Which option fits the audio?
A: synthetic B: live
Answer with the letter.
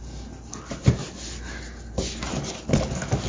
B